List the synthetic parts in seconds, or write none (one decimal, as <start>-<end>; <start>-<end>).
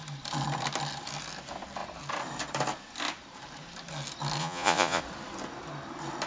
4.4-5.0